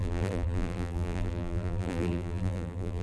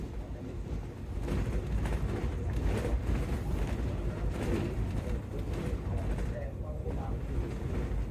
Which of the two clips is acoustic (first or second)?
second